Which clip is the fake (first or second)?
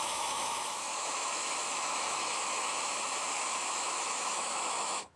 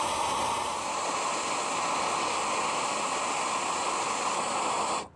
first